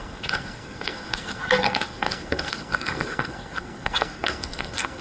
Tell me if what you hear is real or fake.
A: fake